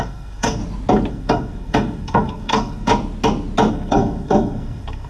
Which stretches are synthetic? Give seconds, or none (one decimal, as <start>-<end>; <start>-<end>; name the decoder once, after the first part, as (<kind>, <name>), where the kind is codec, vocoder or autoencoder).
0.0-0.6 (codec, SNAC); 1.1-2.9; 3.7-5.1